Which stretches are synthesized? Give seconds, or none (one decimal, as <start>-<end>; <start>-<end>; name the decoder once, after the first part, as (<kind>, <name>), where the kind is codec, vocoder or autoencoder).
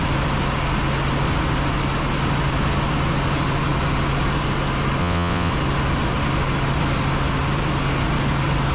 5.0-5.5 (vocoder, WaveNeXt)